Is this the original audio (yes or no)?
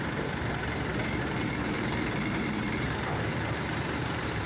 no